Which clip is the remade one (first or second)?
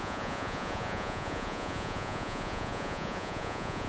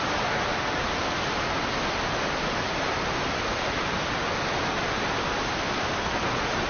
first